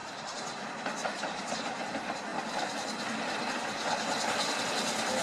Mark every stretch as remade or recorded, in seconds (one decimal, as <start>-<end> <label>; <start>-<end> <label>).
0.0-1.5 remade; 1.5-5.2 recorded